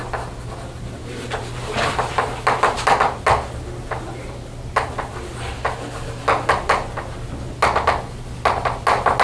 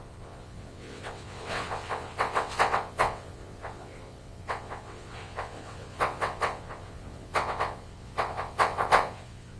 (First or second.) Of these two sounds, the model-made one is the second